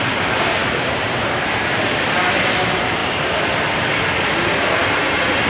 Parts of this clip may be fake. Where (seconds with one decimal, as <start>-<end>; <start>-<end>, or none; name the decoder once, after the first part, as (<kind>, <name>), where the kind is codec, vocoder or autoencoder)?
0.6-1.2 (vocoder, BigVGAN v2)